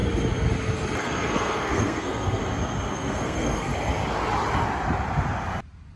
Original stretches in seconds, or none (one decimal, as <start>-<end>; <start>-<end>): 0.0-1.0; 2.4-2.9; 3.7-6.0